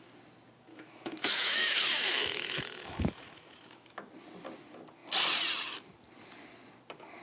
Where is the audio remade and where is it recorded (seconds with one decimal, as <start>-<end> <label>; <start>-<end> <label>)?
0.0-0.7 recorded; 0.7-4.1 remade; 4.1-7.2 recorded